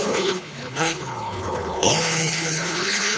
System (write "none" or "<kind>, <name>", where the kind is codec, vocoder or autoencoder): codec, HILCodec